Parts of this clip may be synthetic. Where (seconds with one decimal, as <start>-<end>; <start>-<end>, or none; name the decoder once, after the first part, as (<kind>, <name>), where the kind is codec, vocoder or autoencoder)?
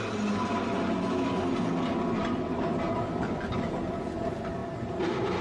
none